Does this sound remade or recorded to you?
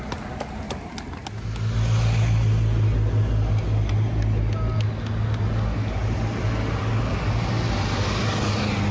recorded